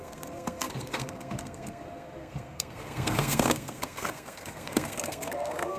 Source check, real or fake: fake